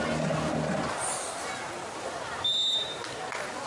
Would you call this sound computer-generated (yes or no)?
no